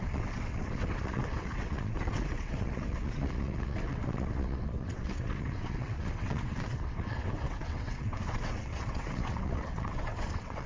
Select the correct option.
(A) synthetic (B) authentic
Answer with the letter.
A